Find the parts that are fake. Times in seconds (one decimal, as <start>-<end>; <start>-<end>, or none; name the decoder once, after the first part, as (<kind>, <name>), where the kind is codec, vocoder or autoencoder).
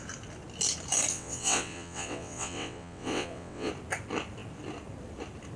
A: 1.1-3.7 (vocoder, WaveNeXt)